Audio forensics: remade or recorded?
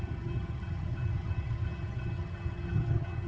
remade